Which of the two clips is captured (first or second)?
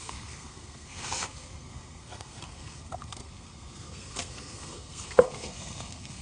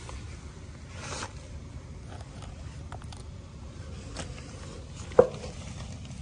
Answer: second